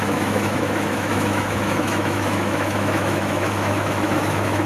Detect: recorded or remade remade